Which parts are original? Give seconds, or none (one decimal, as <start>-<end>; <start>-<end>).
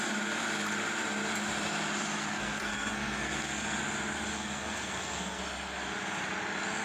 0.0-2.2; 3.8-4.3; 5.4-6.8